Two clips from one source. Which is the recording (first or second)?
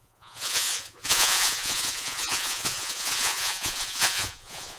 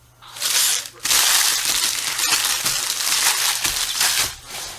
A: second